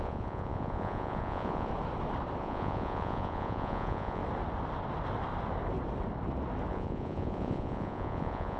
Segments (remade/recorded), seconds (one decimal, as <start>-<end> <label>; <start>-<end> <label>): 0.0-1.7 remade; 1.7-2.4 recorded; 2.4-4.2 remade; 4.2-6.7 recorded; 6.7-8.6 remade